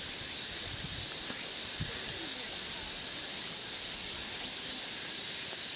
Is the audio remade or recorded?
recorded